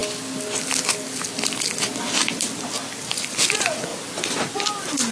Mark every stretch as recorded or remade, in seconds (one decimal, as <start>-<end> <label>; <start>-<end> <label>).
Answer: 0.0-5.1 recorded